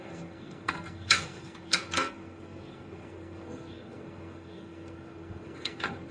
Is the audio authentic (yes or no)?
no